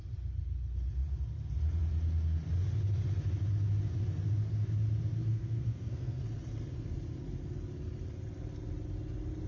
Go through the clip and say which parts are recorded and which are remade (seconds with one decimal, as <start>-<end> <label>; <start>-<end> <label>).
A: 0.0-5.3 recorded; 5.3-6.2 remade; 6.2-9.5 recorded